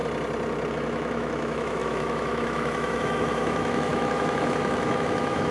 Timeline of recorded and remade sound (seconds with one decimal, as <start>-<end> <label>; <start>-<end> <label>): 0.0-0.7 recorded; 0.7-5.5 remade